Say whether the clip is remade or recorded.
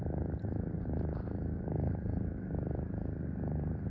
remade